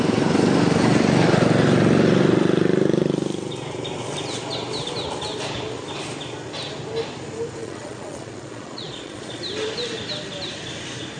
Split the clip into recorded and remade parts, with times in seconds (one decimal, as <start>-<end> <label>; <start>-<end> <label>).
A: 0.0-7.6 recorded; 7.6-9.4 remade; 9.4-11.2 recorded